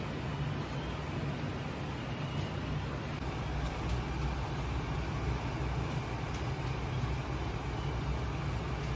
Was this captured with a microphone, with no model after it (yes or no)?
yes